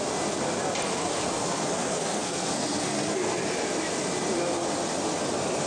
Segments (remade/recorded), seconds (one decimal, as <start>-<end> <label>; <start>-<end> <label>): 0.0-1.2 recorded; 1.2-3.4 remade; 3.4-5.7 recorded